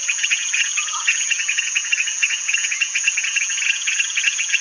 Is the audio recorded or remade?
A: remade